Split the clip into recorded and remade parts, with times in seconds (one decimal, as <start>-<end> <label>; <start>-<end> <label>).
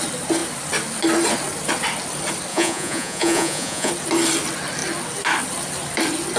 0.0-2.5 recorded; 2.5-3.9 remade; 3.9-6.4 recorded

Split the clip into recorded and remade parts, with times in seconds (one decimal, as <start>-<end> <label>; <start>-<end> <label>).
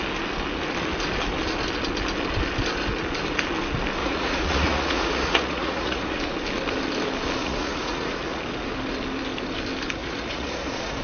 0.0-4.0 recorded; 4.0-6.2 remade; 6.2-7.4 recorded; 7.4-8.4 remade; 8.4-10.0 recorded; 10.0-11.0 remade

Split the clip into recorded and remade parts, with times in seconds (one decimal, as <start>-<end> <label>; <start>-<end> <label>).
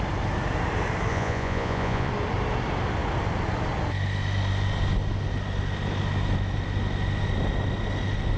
0.0-1.1 recorded; 1.1-2.1 remade; 2.1-8.4 recorded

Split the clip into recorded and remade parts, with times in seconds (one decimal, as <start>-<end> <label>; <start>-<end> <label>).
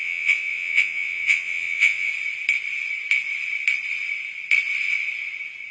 0.0-2.1 remade; 2.1-5.7 recorded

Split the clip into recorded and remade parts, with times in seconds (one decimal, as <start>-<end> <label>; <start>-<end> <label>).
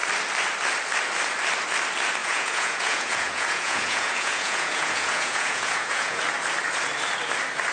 0.0-2.2 recorded; 2.2-6.2 remade; 6.2-7.7 recorded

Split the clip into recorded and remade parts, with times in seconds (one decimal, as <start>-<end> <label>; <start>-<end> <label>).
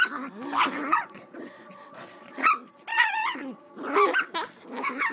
0.0-0.8 recorded; 0.8-2.5 remade; 2.5-2.9 recorded; 2.9-3.6 remade; 3.6-5.1 recorded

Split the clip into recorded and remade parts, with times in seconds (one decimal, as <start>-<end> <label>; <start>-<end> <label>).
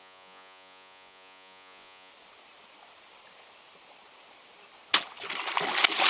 0.0-2.1 remade; 2.1-6.1 recorded